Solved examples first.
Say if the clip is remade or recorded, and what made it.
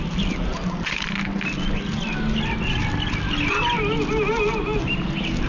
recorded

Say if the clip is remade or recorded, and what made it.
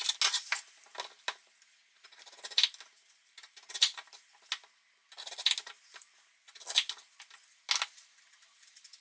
recorded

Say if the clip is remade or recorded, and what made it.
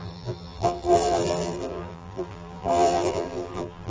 remade, vocoder, BigVGAN v2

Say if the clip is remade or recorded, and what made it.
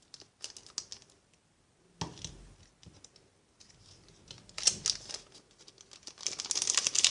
recorded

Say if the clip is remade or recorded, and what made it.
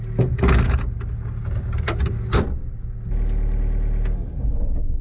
recorded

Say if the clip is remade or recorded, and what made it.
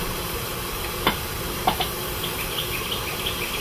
remade, vocoder, BigVGAN v2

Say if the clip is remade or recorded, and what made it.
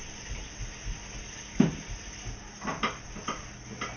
recorded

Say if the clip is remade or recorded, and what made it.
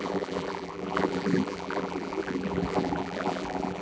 remade, vocoder, BigVGAN v2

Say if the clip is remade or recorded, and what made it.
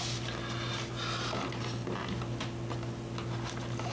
recorded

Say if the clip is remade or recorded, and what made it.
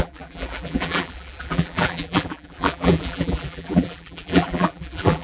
remade, vocoder, BigVGAN v2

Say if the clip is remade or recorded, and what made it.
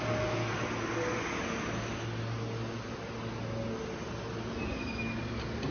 recorded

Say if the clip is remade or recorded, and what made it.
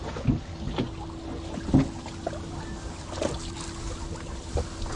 recorded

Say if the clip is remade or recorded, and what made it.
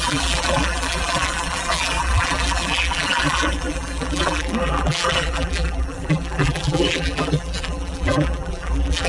remade, vocoder, BigVGAN v2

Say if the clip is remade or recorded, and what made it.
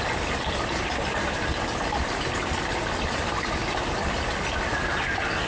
recorded